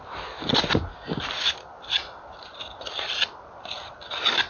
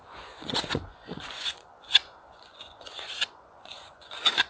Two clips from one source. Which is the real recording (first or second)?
first